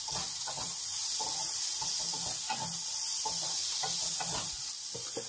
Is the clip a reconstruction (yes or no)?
no